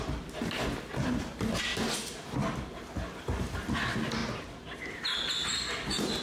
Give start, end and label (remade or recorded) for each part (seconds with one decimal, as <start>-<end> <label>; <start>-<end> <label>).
0.0-6.2 recorded